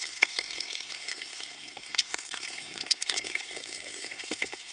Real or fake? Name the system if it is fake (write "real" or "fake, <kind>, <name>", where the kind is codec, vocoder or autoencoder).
fake, codec, SNAC